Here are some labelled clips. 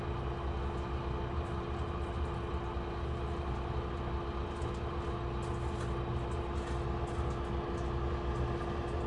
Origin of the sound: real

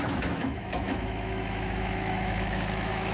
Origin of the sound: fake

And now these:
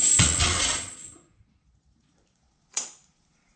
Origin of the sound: fake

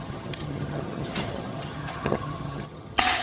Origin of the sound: fake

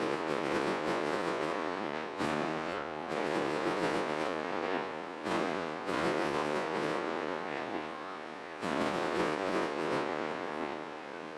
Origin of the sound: fake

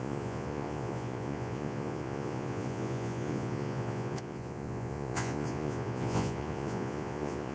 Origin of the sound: fake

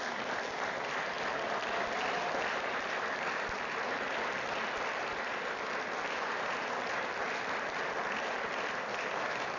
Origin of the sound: real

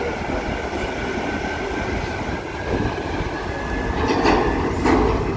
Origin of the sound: real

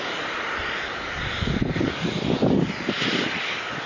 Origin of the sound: real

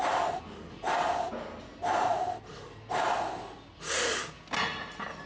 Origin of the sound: real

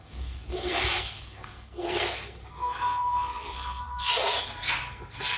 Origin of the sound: fake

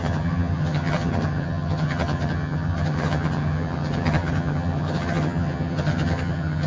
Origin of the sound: fake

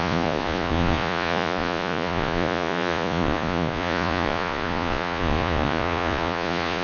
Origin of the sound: fake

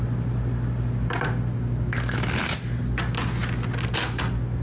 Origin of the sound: real